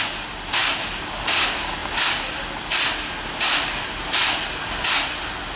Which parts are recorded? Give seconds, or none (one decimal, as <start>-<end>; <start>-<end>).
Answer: 0.0-5.6